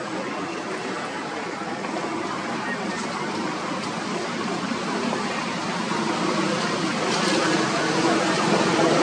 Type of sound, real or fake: real